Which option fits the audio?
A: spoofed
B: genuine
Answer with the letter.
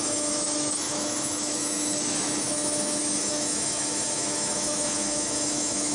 A